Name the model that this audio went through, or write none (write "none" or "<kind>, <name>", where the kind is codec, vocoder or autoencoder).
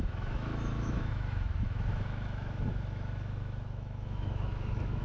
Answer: autoencoder, DAC-VAE